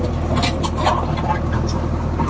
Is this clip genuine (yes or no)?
yes